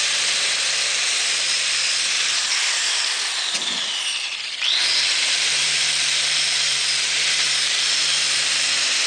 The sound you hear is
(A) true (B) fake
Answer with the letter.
B